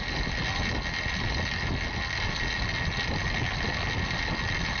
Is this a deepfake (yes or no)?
no